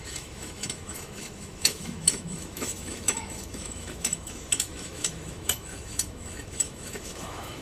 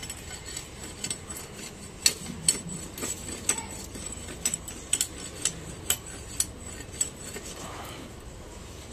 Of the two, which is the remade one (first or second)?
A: first